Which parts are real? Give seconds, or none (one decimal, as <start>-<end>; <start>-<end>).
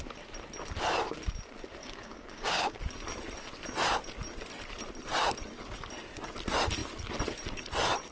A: 0.0-1.8; 2.8-8.1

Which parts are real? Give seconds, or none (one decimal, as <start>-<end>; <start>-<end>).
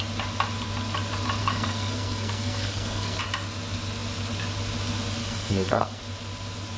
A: 0.0-1.4; 3.2-5.2; 6.0-6.8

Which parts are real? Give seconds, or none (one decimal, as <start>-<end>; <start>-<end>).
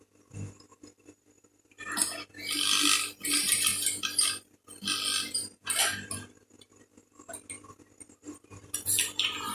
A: 0.0-9.5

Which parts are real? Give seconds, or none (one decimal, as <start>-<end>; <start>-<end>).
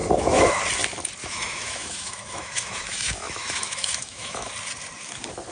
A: 0.6-1.2; 4.5-5.5